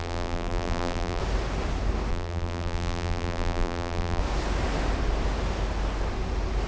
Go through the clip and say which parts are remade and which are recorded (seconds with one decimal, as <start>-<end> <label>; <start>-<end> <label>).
0.0-1.2 remade; 1.2-2.1 recorded; 2.1-4.2 remade; 4.2-6.7 recorded